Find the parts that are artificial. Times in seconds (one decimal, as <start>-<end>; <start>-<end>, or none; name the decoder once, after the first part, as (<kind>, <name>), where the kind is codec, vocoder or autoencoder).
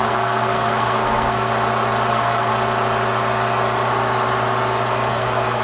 0.0-1.5 (codec, SNAC); 2.1-2.5; 5.1-5.6